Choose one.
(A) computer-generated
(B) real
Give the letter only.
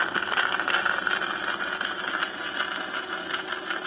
B